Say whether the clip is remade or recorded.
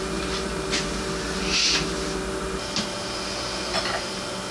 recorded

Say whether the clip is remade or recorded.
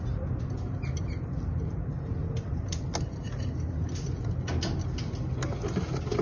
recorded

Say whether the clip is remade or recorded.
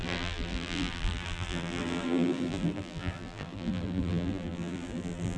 remade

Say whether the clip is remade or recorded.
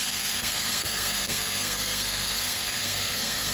remade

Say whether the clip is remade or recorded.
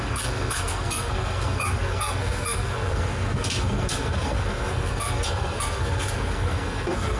remade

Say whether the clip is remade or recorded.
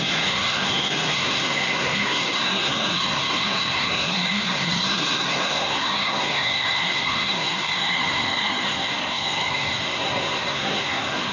remade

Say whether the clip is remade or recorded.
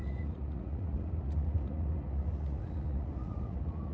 remade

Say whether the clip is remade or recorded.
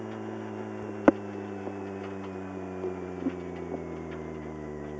recorded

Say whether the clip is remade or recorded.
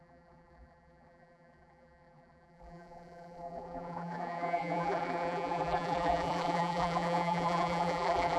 remade